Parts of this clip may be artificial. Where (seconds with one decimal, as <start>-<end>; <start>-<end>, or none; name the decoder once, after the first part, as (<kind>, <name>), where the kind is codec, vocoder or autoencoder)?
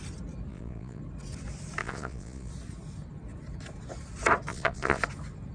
0.5-1.0 (vocoder, Vocos); 1.8-2.5; 4.5-5.0